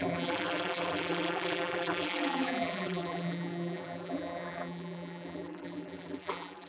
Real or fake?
fake